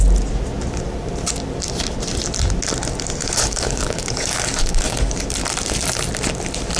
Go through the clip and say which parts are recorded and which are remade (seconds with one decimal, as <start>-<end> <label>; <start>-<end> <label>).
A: 0.0-3.2 recorded; 3.2-5.2 remade; 5.2-6.8 recorded